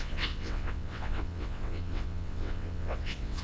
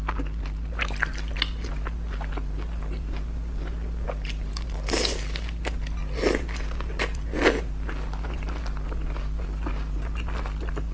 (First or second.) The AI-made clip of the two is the first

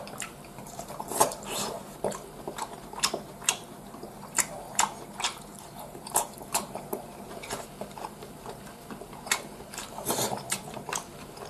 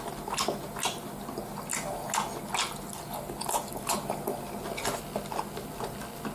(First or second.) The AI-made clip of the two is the first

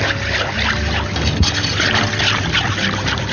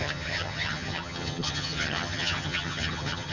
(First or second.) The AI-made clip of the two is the second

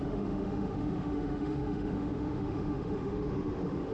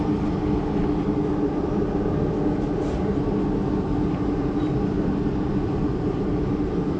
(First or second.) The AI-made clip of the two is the first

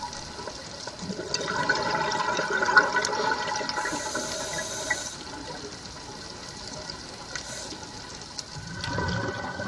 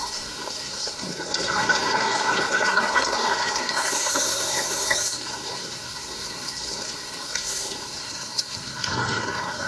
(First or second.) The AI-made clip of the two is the second